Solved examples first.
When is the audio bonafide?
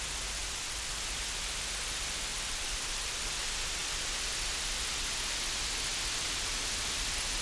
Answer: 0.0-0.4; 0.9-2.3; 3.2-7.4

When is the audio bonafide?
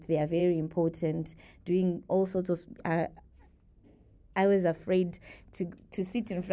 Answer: 0.0-6.5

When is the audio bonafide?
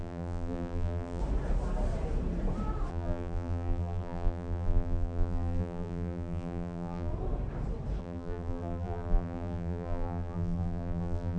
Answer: 1.2-2.9; 7.1-8.0